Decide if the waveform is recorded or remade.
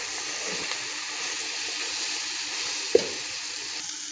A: recorded